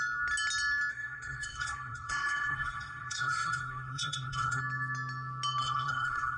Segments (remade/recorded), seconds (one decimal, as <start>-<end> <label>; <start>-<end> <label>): 0.0-0.9 recorded; 0.9-4.6 remade; 4.6-5.6 recorded; 5.6-6.4 remade